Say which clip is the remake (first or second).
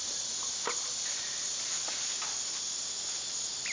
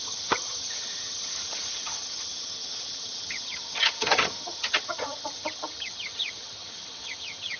second